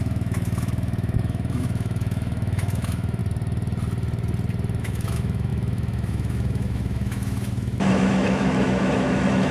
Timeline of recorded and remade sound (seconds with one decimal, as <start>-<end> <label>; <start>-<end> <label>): 0.0-3.2 remade; 3.2-4.8 recorded; 4.8-9.5 remade

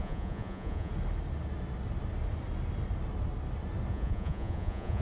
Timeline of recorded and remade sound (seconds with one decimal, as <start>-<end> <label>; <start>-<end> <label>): 0.0-0.9 remade; 0.9-3.9 recorded; 3.9-5.0 remade